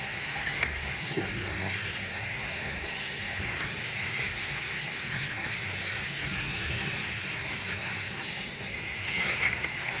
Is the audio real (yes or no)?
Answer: no